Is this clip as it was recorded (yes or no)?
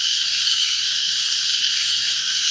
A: no